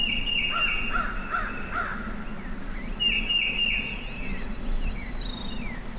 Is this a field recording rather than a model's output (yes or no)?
yes